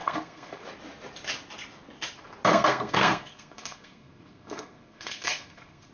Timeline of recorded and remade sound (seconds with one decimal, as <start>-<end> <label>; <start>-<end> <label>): 0.0-0.6 remade; 0.6-2.5 recorded; 2.5-5.9 remade